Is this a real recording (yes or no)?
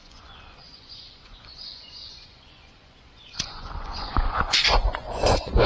no